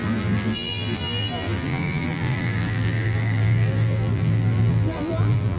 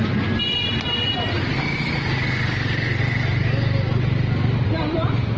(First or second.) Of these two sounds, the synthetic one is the first